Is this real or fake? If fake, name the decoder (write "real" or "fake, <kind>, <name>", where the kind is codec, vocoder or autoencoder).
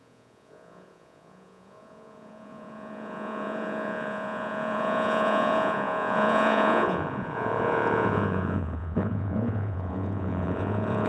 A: fake, vocoder, Vocos